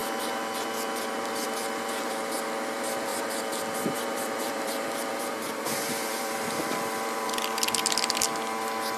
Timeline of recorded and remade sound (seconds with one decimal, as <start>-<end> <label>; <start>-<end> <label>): 0.0-2.4 remade; 2.4-3.1 recorded; 3.1-7.3 remade; 7.3-9.0 recorded